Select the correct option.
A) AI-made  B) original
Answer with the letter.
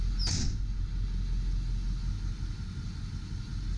B